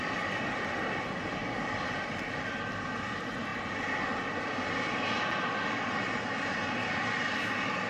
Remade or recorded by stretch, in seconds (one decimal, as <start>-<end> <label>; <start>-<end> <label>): 0.0-7.9 recorded